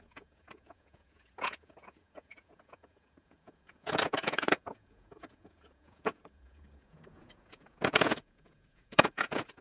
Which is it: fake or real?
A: fake